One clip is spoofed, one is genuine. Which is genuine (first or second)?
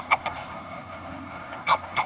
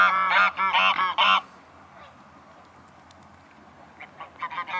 second